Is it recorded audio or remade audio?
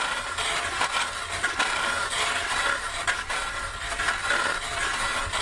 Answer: recorded